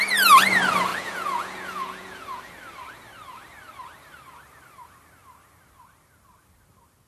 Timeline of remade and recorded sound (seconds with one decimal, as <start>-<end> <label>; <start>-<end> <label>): 0.0-0.9 recorded; 0.9-2.4 remade; 2.4-7.1 recorded